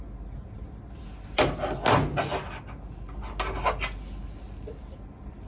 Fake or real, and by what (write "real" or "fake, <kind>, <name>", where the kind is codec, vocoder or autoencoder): real